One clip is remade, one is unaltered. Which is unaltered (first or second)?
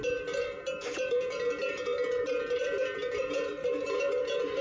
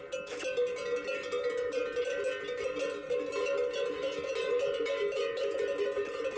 second